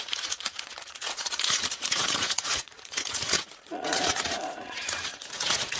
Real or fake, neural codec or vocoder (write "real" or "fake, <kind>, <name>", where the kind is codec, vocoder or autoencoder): fake, vocoder, Vocos